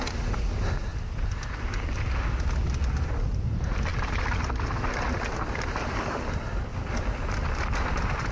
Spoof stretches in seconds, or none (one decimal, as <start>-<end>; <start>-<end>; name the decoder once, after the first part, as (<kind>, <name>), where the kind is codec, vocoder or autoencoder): none